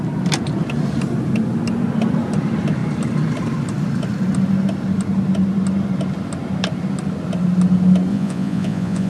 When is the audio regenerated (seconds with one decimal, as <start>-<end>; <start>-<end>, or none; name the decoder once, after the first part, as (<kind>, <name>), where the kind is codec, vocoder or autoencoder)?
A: 8.1-9.1 (vocoder, Vocos)